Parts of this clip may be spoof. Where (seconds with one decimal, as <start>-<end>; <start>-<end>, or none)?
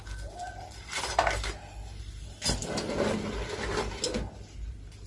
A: none